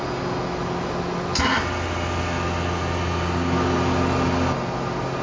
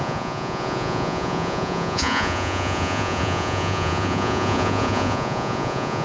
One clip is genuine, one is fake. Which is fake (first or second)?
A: second